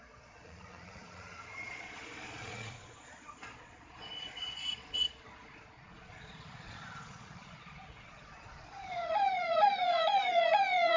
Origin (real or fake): fake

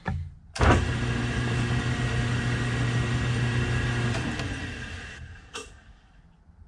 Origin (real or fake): real